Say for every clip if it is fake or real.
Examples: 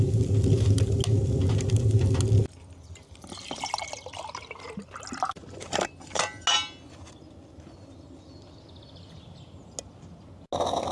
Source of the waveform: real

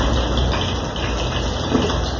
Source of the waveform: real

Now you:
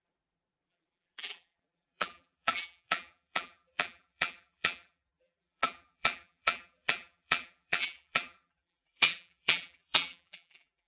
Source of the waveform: fake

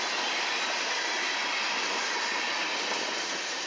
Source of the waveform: real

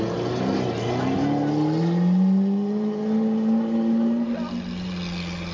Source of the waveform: real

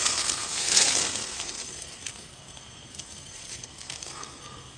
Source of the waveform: fake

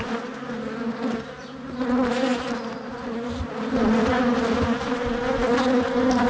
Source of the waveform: real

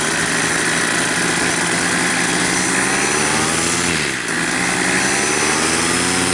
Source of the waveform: real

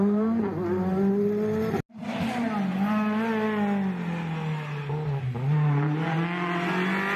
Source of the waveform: real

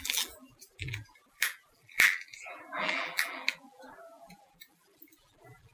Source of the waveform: fake